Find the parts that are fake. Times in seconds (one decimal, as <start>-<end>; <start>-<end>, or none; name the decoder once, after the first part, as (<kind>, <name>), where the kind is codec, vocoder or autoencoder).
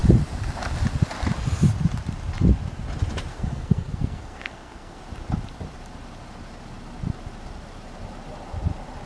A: 3.3-5.0 (codec, SNAC)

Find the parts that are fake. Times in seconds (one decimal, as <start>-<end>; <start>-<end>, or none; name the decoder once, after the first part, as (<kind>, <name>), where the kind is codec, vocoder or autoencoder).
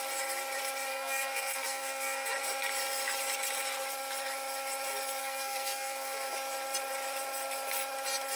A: 0.9-2.4 (codec, SNAC); 5.2-6.3